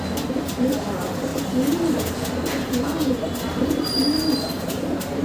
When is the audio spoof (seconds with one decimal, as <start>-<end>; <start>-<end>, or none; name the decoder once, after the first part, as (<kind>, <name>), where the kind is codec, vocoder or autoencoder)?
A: none